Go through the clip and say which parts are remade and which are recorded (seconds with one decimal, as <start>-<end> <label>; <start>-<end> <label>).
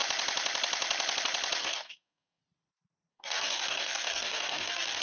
0.0-1.6 recorded; 1.6-2.4 remade; 2.4-3.1 recorded; 3.1-5.0 remade